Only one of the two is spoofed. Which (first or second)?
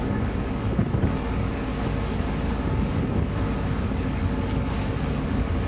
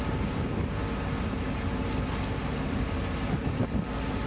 first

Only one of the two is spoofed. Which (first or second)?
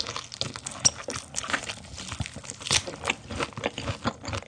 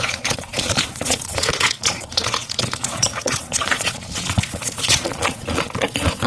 second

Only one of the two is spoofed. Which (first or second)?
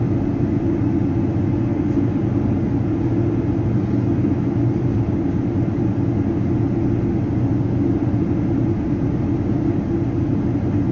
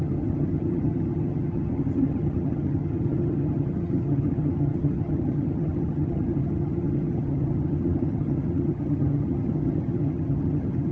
second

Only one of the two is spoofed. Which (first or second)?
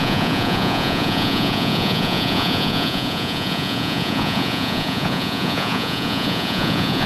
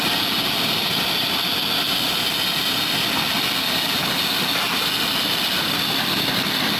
first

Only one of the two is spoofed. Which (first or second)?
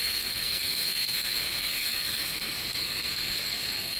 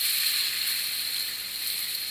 first